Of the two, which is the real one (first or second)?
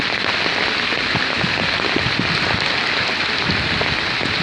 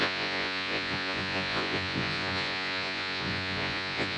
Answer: first